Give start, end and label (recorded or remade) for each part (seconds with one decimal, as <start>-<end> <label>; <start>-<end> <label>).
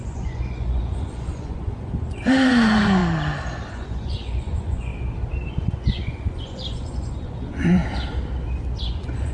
0.0-3.0 remade; 3.0-3.7 recorded; 3.7-4.9 remade; 4.9-5.5 recorded; 5.5-7.8 remade; 7.8-8.8 recorded; 8.8-9.3 remade